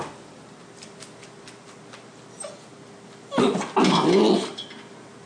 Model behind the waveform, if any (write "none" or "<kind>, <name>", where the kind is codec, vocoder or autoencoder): none